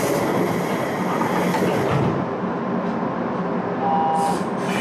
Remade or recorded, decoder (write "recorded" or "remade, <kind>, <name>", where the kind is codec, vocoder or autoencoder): recorded